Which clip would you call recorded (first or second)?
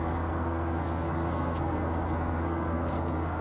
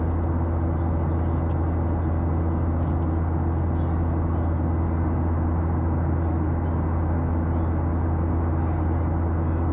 second